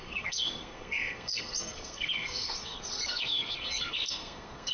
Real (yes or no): no